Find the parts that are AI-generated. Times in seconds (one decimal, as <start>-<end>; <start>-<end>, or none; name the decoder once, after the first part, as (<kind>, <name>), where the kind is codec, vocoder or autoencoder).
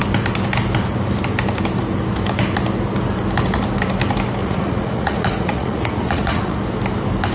4.4-6.6 (vocoder, Vocos)